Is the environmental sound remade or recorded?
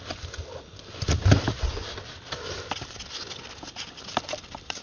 recorded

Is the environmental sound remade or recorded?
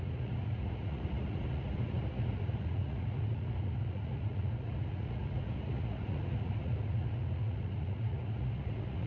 remade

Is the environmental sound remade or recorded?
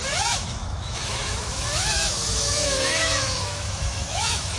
remade